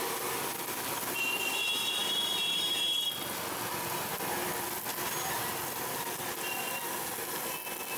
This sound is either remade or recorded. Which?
recorded